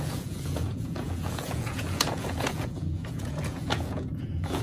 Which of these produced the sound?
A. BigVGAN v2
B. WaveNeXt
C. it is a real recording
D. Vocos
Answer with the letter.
D